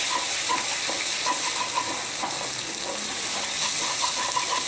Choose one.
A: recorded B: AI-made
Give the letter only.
A